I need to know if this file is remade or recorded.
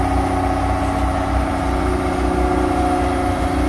recorded